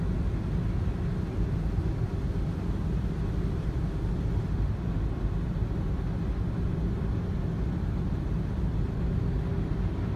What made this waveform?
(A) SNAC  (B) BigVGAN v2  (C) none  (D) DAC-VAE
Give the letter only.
C